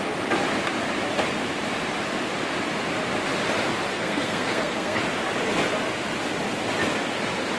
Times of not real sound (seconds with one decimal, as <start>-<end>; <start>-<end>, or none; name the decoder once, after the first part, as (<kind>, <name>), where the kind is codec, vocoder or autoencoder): 3.9-5.0 (codec, SNAC)